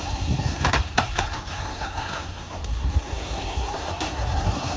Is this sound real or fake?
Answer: fake